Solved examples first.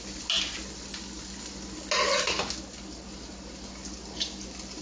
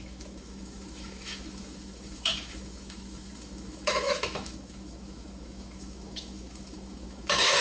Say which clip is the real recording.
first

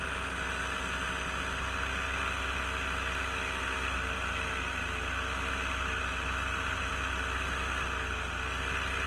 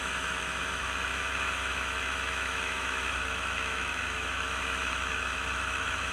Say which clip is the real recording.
first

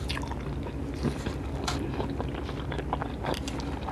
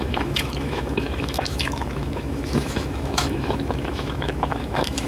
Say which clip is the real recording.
first